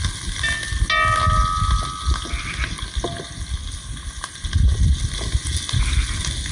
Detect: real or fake real